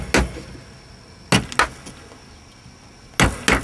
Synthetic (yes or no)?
no